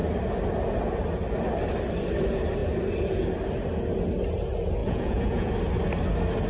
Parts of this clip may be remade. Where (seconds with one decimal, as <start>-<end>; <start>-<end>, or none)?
4.8-5.5